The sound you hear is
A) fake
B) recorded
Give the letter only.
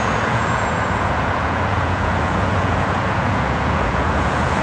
A